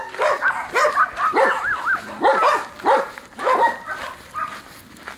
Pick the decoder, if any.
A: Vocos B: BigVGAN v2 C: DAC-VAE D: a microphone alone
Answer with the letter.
D